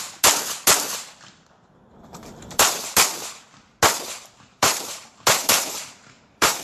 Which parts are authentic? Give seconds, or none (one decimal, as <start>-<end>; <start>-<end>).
0.0-2.1; 2.7-4.5

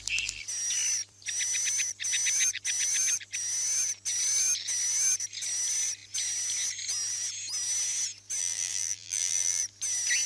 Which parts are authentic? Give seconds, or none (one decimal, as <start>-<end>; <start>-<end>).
0.0-8.4; 9.6-10.3

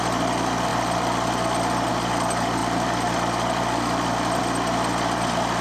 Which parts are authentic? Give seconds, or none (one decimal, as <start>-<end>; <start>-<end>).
0.0-5.6

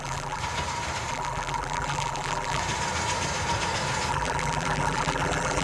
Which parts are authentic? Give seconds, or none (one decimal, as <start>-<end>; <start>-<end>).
0.4-1.1; 2.6-4.1

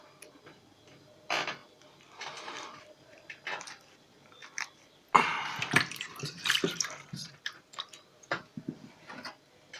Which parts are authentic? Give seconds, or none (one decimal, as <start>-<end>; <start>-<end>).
0.0-1.6; 3.0-4.4; 8.4-9.8